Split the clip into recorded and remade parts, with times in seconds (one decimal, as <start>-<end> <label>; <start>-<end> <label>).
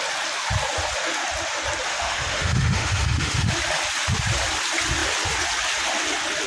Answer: 0.0-1.9 recorded; 1.9-3.5 remade; 3.5-6.5 recorded